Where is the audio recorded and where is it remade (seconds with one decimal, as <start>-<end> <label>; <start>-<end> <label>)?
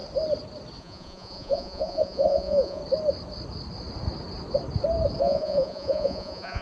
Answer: 0.0-0.8 recorded; 0.8-2.8 remade; 2.8-5.2 recorded; 5.2-6.6 remade